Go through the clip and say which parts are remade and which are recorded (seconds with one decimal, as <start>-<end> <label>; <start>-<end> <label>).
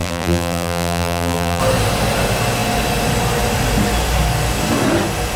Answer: 0.0-1.6 remade; 1.6-5.4 recorded